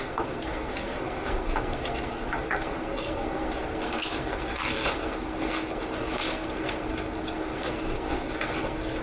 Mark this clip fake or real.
fake